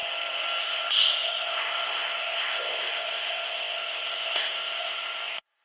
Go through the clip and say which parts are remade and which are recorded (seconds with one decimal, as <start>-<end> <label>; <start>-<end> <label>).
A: 0.0-0.6 recorded; 0.6-5.6 remade